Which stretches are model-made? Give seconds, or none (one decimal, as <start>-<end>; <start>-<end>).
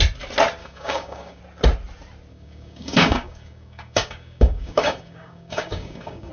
0.6-1.4; 2.3-6.3